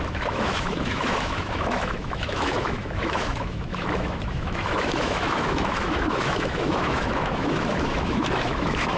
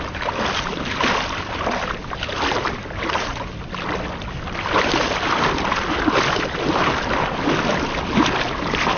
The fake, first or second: first